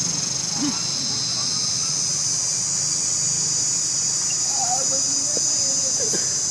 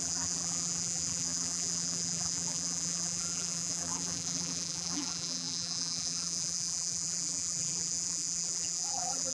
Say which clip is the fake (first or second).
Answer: second